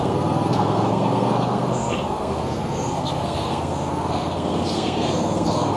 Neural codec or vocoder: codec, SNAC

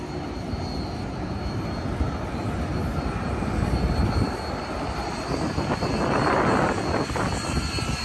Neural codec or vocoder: none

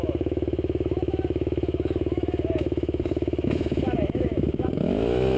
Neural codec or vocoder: autoencoder, DAC-VAE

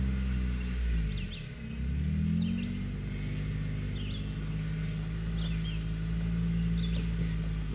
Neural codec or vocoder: none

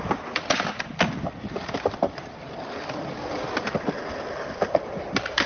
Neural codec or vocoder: vocoder, BigVGAN v2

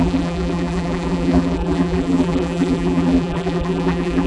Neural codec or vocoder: vocoder, BigVGAN v2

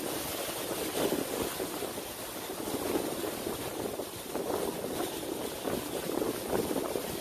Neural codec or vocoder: none